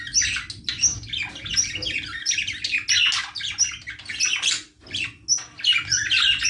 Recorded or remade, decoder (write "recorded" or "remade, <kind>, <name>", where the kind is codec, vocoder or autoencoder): recorded